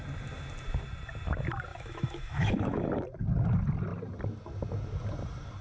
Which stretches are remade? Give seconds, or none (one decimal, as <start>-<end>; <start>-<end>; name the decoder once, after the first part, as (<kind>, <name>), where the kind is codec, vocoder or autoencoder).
1.7-2.8 (autoencoder, DAC-VAE)